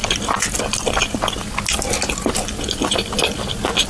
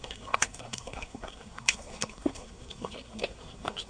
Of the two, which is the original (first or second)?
first